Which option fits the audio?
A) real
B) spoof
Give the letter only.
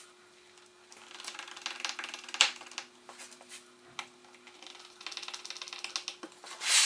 A